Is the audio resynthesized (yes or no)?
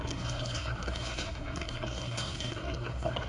yes